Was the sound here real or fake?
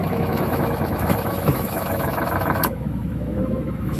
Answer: fake